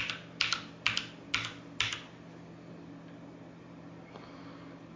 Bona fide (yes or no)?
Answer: yes